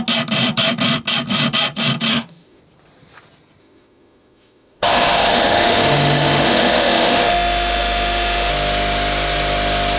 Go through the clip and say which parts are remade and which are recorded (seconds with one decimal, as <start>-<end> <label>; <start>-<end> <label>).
0.0-2.1 recorded; 2.1-2.6 remade; 2.6-3.6 recorded; 3.6-8.5 remade; 8.5-10.0 recorded